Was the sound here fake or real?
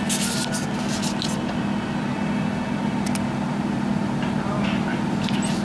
real